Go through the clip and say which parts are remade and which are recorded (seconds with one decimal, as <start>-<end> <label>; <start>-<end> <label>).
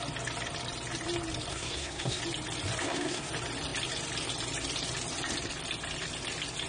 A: 0.0-1.5 recorded; 1.5-2.2 remade; 2.2-2.8 recorded; 2.8-3.3 remade; 3.3-6.7 recorded